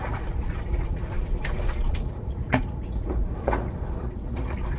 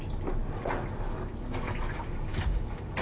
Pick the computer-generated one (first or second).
first